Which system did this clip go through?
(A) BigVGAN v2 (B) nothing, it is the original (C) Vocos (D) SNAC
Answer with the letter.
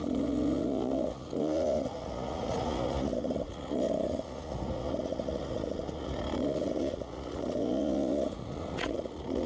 C